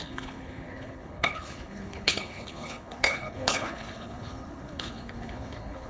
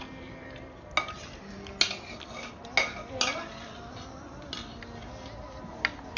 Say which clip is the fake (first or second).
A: first